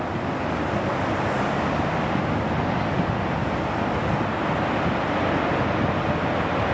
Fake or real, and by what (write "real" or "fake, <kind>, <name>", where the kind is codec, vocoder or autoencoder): real